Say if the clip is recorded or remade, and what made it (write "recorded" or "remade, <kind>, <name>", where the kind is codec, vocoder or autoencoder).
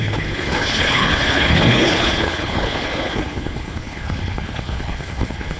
remade, codec, HILCodec